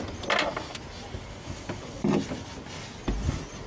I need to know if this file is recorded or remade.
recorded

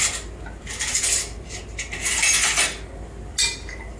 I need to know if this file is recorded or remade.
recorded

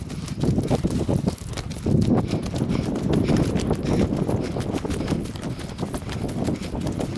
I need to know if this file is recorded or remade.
recorded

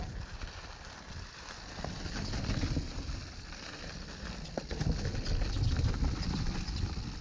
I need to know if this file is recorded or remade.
recorded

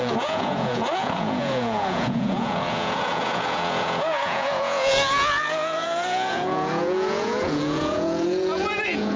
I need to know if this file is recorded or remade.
remade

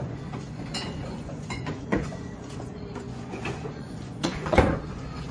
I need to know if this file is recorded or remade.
remade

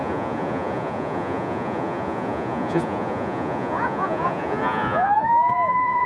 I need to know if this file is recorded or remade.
remade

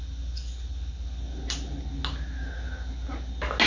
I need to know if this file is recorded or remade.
recorded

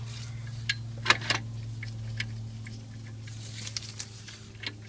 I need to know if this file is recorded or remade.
recorded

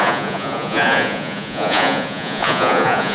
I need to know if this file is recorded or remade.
remade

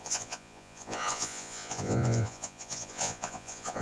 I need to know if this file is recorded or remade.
remade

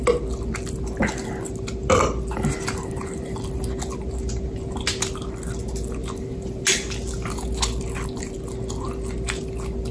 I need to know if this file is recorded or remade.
recorded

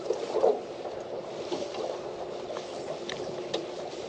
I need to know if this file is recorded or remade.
recorded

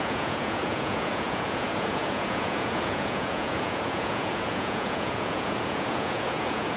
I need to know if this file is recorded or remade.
remade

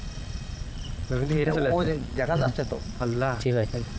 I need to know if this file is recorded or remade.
remade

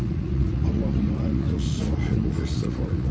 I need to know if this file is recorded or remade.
remade